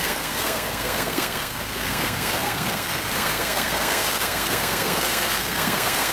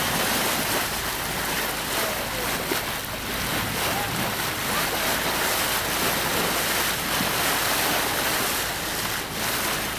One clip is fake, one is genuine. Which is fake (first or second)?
first